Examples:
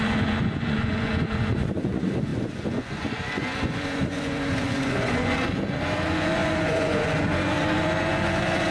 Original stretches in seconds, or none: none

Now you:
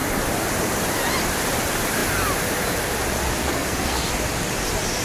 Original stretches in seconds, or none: 0.0-3.4; 4.1-5.0

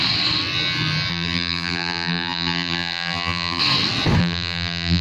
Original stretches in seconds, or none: 0.0-1.1; 3.6-4.2

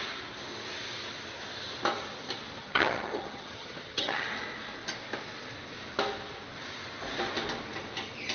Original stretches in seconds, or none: 0.0-2.6; 4.3-8.3

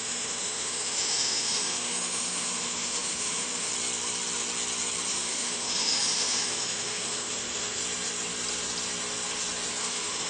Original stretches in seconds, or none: 3.7-5.1; 7.8-9.8